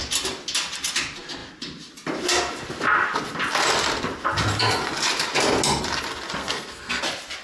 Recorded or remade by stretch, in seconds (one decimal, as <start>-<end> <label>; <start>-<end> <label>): 0.0-6.4 recorded; 6.4-7.0 remade; 7.0-7.4 recorded